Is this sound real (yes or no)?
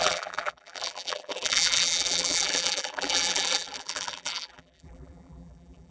no